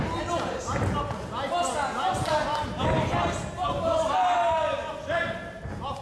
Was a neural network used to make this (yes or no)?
no